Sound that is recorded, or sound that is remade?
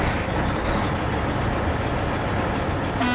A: recorded